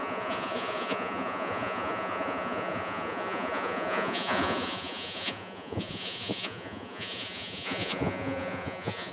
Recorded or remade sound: remade